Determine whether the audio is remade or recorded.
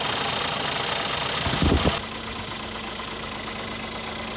recorded